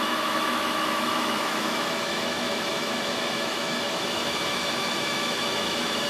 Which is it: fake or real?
fake